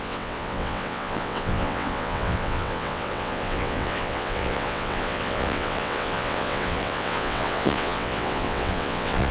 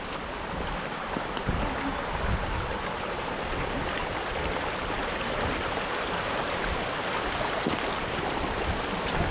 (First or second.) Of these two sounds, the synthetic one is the first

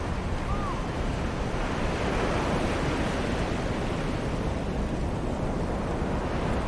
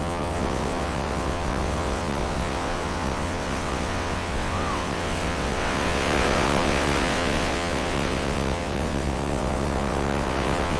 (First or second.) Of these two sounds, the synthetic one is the second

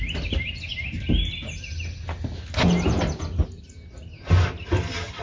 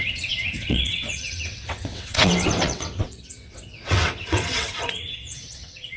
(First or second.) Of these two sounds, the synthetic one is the second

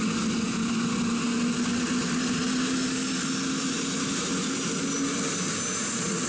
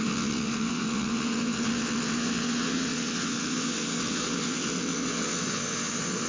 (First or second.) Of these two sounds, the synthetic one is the second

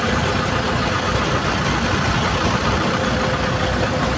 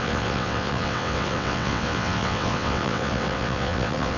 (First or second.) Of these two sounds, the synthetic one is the second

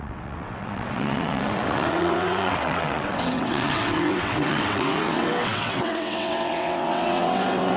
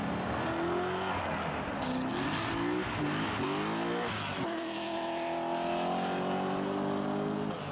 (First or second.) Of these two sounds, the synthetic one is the first